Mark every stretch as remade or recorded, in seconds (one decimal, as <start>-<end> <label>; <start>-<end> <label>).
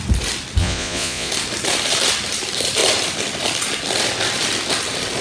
0.0-0.6 recorded; 0.6-1.3 remade; 1.3-5.2 recorded